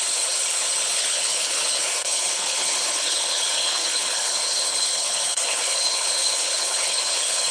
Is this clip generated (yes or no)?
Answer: yes